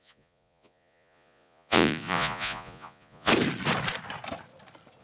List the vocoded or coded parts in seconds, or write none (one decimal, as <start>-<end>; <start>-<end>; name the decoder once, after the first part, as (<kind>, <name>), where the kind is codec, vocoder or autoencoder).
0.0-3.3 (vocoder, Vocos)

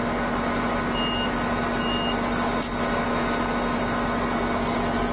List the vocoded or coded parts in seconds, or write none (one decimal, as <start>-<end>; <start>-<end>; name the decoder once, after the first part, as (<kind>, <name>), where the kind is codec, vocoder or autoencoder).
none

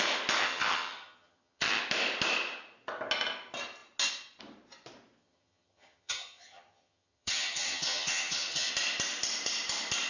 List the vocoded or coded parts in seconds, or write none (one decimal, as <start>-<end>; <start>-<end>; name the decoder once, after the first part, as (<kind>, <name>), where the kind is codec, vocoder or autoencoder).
0.4-1.8 (vocoder, HiFi-GAN); 5.2-8.7

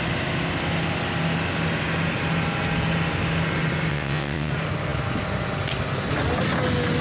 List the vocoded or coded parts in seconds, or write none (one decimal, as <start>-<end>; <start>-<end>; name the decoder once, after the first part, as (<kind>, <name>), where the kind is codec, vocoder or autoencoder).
3.9-4.5 (vocoder, WaveNeXt)

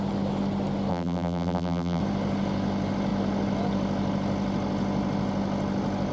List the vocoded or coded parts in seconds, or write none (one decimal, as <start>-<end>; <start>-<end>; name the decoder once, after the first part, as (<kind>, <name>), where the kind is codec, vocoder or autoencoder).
0.9-2.0 (vocoder, BigVGAN v2)